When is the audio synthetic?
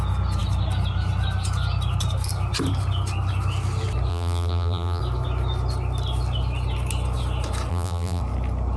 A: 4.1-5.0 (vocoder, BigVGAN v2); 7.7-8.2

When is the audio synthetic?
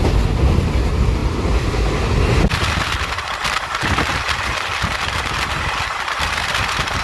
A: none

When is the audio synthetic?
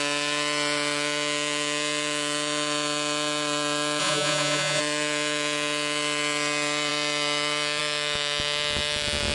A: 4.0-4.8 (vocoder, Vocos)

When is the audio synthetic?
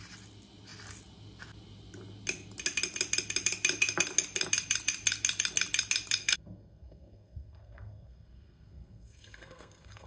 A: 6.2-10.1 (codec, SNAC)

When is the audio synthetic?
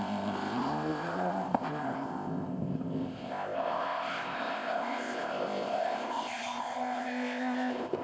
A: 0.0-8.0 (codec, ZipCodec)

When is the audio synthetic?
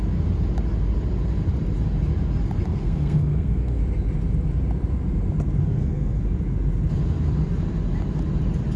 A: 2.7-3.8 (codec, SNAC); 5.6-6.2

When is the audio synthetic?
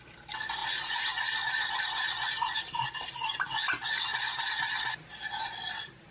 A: none